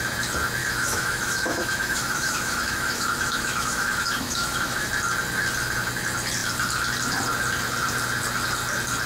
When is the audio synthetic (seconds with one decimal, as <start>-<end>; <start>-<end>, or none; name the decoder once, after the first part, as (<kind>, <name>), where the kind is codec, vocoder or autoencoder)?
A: 0.6-4.9 (autoencoder, DAC-VAE)